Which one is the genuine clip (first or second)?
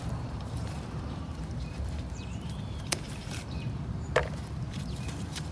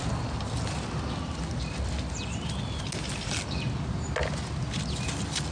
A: second